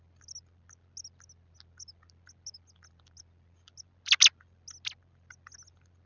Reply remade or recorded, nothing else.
recorded